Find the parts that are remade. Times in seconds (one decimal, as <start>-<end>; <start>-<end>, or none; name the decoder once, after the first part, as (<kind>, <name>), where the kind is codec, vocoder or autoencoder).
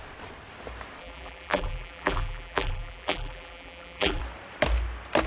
1.0-4.2 (vocoder, BigVGAN v2)